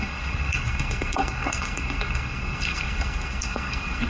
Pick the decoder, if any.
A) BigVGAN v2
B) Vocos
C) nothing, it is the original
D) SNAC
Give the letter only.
D